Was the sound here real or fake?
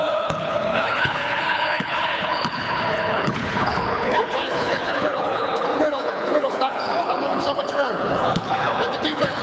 fake